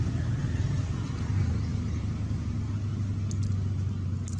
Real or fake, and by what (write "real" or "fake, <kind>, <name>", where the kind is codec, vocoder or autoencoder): real